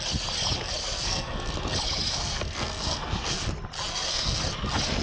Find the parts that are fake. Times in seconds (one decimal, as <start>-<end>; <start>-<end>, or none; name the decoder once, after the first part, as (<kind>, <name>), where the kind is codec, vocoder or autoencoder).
0.8-1.5 (codec, SNAC); 2.1-3.5; 3.9-4.4